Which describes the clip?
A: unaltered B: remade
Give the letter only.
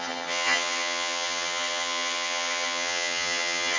B